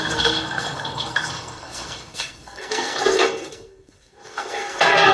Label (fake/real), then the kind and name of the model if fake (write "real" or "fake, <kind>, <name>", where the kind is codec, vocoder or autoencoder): fake, codec, SNAC